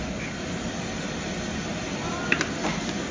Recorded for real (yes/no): yes